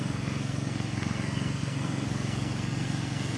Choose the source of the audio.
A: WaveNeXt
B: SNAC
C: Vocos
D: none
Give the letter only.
B